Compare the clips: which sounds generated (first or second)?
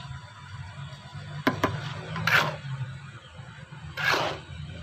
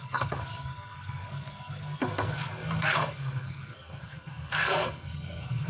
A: second